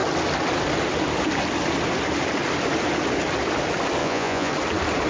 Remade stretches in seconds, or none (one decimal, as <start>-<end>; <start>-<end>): 4.0-4.5